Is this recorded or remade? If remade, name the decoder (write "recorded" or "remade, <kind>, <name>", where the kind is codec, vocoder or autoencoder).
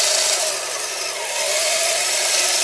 remade, vocoder, BigVGAN v2